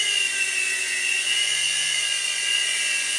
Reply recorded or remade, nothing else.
remade